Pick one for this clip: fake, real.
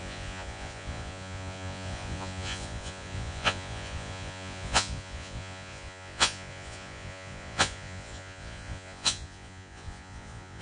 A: fake